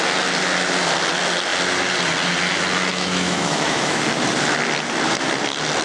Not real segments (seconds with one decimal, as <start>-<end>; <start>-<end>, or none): 2.9-4.0